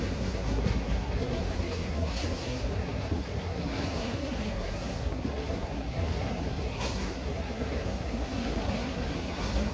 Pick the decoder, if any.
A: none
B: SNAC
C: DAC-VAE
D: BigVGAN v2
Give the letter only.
B